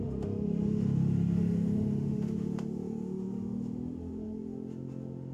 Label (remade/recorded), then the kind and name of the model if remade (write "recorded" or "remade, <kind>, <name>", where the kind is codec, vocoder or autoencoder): remade, autoencoder, DAC-VAE